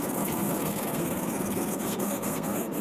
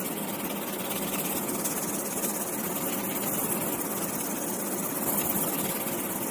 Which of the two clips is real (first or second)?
second